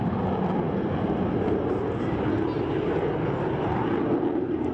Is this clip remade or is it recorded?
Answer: recorded